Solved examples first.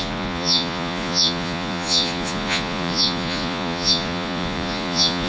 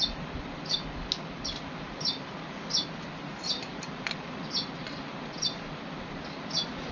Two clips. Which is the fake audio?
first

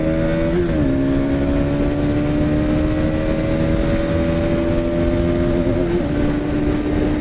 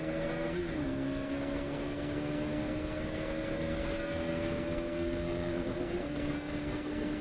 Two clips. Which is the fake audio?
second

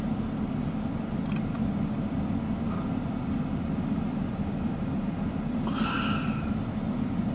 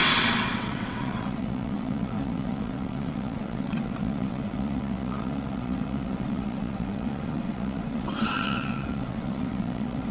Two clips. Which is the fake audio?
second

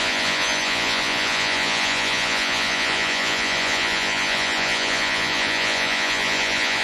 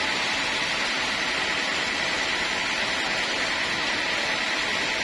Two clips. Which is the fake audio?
first